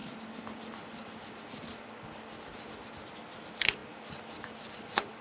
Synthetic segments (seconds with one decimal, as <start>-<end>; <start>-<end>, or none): none